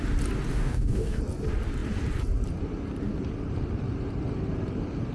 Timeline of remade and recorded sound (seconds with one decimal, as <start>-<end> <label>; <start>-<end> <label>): 0.0-0.5 recorded; 0.5-1.2 remade; 1.2-5.1 recorded